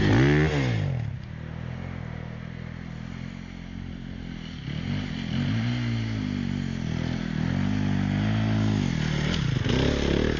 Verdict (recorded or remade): recorded